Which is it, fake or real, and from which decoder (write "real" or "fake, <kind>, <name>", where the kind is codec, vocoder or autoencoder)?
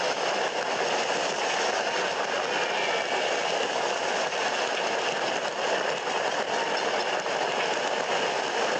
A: real